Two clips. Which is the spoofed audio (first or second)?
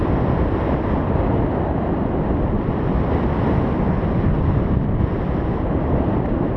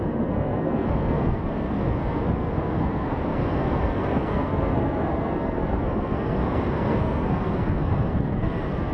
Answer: second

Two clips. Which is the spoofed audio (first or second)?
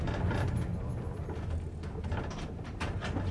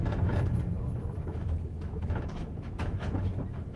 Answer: second